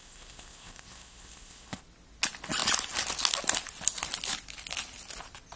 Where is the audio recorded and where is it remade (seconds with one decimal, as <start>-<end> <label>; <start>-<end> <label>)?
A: 0.0-1.8 remade; 1.8-5.6 recorded